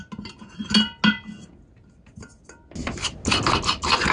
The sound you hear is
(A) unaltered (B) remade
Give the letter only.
A